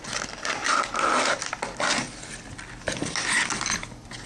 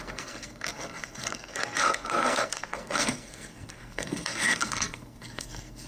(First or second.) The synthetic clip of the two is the second